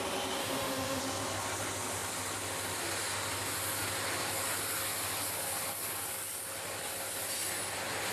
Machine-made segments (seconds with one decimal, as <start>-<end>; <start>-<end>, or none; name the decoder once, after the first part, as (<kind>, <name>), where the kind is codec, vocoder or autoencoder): 0.4-1.0 (autoencoder, DAC-VAE)